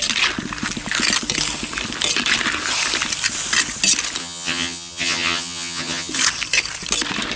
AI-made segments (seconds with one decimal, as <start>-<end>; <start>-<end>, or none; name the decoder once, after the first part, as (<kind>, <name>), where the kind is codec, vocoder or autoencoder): 4.2-6.1 (vocoder, HiFi-GAN)